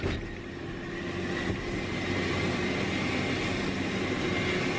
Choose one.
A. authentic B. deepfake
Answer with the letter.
A